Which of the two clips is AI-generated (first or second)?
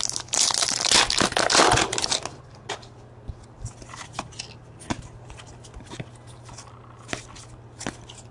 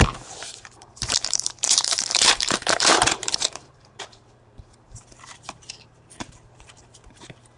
second